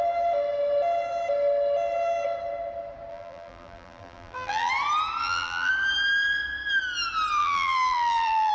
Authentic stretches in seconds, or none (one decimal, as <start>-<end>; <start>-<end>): 0.0-3.1; 4.7-5.2; 5.7-7.4